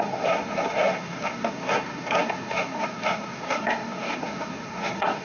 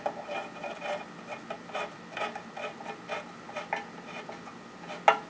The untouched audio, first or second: second